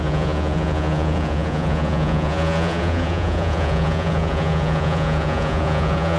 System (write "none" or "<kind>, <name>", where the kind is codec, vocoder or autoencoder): vocoder, Vocos